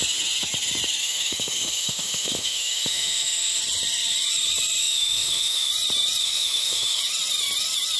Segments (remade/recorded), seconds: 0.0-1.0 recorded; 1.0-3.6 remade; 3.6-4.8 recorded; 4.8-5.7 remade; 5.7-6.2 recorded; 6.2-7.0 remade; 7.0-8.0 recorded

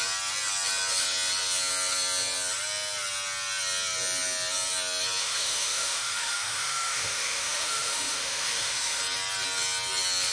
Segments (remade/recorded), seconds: 0.0-5.2 recorded; 5.2-9.0 remade; 9.0-10.3 recorded

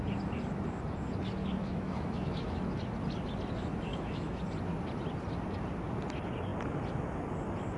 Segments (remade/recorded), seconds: 0.0-1.4 recorded; 1.4-2.6 remade; 2.6-3.9 recorded; 3.9-4.4 remade; 4.4-7.8 recorded

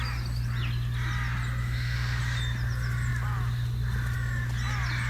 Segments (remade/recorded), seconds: 0.0-1.6 recorded; 1.6-2.2 remade; 2.2-5.1 recorded

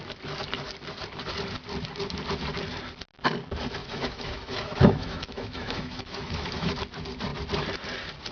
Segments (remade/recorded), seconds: 0.0-3.8 recorded; 3.8-6.7 remade; 6.7-8.3 recorded

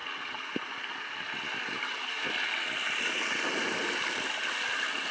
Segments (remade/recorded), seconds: 0.0-5.1 recorded

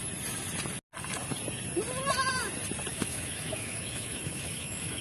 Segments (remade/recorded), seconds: 0.0-2.9 recorded; 2.9-5.0 remade

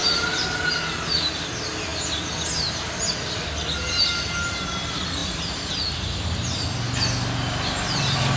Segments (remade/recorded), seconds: 0.0-8.4 recorded